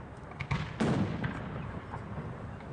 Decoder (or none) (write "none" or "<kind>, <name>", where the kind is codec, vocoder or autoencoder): none